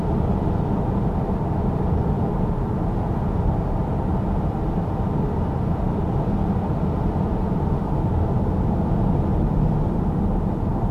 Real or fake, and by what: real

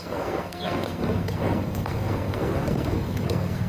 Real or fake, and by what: fake, codec, SNAC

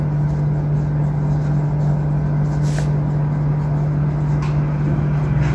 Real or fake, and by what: real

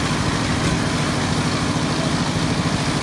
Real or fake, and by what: real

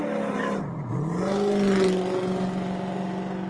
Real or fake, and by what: real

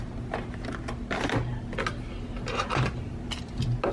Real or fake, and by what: real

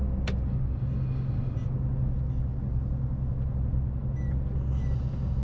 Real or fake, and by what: real